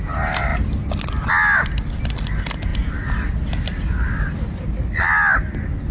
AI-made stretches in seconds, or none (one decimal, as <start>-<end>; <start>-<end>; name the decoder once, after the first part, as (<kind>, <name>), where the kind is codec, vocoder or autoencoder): none